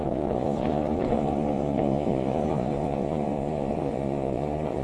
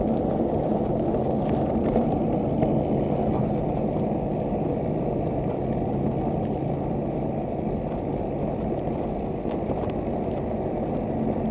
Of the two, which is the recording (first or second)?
second